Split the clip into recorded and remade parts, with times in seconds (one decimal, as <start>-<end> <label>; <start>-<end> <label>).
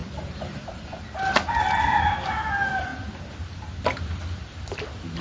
0.0-1.0 remade; 1.0-5.2 recorded